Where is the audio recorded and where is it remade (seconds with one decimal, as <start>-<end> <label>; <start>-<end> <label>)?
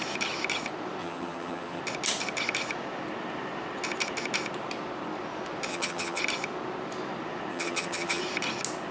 0.0-1.0 recorded; 1.0-1.8 remade; 1.8-5.7 recorded; 5.7-6.2 remade; 6.2-7.5 recorded; 7.5-8.2 remade; 8.2-8.9 recorded